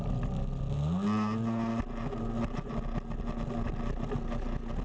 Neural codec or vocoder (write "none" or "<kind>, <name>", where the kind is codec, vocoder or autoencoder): none